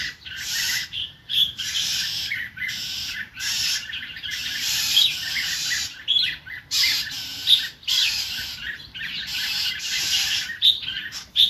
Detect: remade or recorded remade